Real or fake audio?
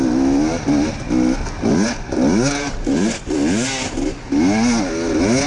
real